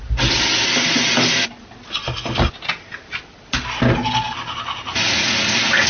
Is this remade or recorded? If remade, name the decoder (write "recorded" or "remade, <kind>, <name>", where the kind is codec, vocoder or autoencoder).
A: recorded